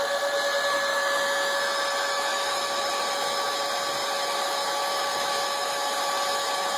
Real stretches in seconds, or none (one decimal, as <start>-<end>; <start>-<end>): 0.0-0.9; 3.6-4.0